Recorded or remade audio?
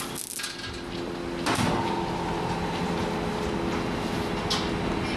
recorded